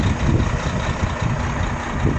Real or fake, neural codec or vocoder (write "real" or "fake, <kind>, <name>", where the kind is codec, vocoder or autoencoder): real